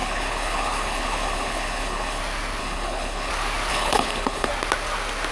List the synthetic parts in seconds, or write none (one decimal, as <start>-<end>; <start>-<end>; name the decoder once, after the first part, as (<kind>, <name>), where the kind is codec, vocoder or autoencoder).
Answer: 0.0-2.2 (codec, HILCodec); 2.6-3.3; 3.7-4.5